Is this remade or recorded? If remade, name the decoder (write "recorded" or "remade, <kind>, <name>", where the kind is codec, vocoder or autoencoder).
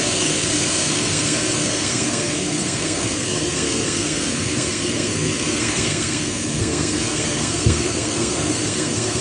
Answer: remade, codec, SNAC